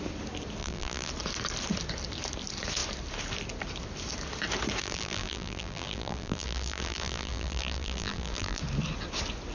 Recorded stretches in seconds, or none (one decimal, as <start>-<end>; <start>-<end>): 0.0-0.6; 1.1-4.8; 8.6-9.5